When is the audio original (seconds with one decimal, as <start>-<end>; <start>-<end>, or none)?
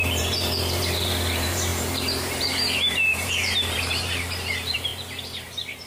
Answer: none